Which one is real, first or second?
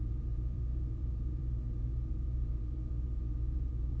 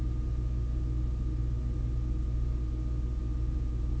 second